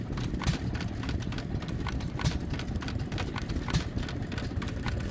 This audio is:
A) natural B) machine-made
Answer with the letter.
A